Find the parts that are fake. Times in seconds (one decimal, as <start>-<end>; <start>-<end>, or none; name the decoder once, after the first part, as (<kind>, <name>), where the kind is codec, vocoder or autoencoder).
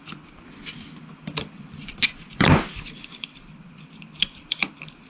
0.0-1.8 (vocoder, BigVGAN v2); 2.3-5.1